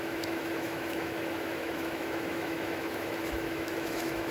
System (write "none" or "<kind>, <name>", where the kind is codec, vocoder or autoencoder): autoencoder, DAC-VAE